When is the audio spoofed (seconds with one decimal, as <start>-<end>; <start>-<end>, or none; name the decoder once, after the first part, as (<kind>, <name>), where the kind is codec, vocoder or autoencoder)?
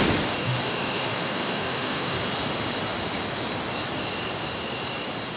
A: 0.4-2.2 (autoencoder, DAC-VAE)